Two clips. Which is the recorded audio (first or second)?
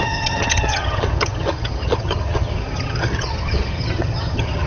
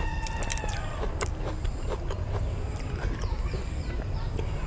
second